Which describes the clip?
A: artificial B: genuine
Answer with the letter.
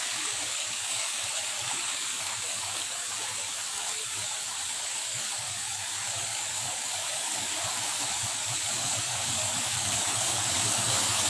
A